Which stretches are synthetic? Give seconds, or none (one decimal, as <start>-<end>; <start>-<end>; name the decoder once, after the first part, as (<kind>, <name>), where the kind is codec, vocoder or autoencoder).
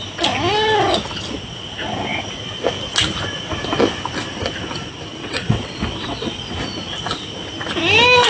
5.2-6.5 (vocoder, WaveNeXt)